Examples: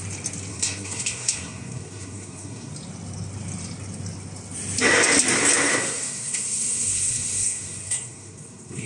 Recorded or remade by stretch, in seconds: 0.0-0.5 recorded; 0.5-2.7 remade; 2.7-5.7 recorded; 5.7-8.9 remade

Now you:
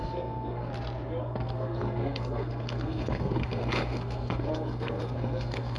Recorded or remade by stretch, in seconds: 0.0-0.7 remade; 0.7-1.2 recorded; 1.2-5.8 remade

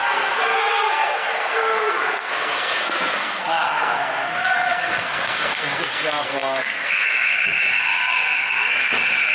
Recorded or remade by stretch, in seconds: 0.0-9.3 remade

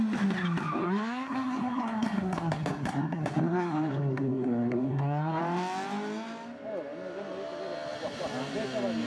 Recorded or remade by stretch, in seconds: 0.0-0.8 recorded; 0.8-5.4 remade; 5.4-9.1 recorded

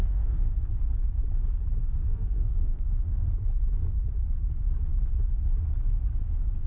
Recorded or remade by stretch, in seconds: 0.0-0.6 remade; 0.6-1.8 recorded; 1.8-3.3 remade; 3.3-6.7 recorded

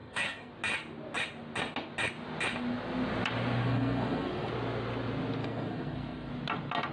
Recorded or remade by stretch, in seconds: 0.0-0.5 remade; 0.5-3.6 recorded; 3.6-4.5 remade; 4.5-5.4 recorded; 5.4-6.3 remade; 6.3-6.9 recorded